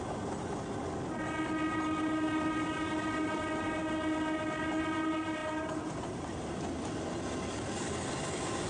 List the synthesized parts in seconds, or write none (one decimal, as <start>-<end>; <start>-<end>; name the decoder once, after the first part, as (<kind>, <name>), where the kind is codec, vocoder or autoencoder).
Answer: none